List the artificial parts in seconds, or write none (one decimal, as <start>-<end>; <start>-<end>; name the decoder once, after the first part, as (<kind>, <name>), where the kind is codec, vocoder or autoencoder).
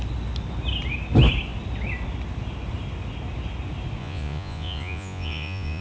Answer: 4.0-5.8 (vocoder, Vocos)